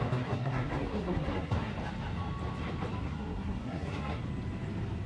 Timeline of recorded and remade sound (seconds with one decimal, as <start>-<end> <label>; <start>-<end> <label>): 0.0-1.7 remade; 1.7-3.0 recorded; 3.0-4.2 remade; 4.2-5.1 recorded